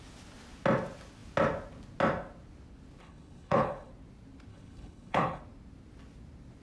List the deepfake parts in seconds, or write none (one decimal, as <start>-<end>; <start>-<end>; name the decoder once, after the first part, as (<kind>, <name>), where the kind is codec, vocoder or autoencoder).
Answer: 3.0-3.9 (codec, HILCodec); 4.5-5.4

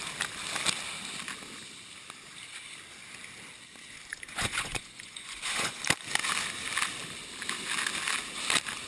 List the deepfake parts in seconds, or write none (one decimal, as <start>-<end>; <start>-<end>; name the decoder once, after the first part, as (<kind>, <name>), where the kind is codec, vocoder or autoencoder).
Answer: 4.1-5.8 (vocoder, Vocos)

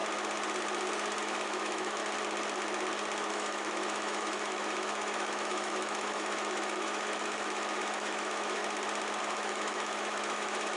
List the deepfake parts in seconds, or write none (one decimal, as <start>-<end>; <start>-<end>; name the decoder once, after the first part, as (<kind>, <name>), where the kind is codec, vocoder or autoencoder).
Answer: 1.2-2.0 (autoencoder, DAC-VAE); 3.3-8.6; 9.2-10.8

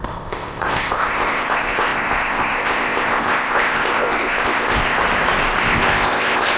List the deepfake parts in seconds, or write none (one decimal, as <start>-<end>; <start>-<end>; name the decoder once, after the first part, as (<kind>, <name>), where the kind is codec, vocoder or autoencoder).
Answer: 0.0-5.0 (codec, ZipCodec); 5.6-6.6